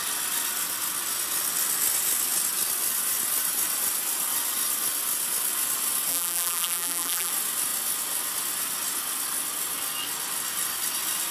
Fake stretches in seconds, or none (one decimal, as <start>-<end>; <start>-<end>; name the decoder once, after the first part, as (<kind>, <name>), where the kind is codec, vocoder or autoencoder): 6.1-7.3 (vocoder, BigVGAN v2)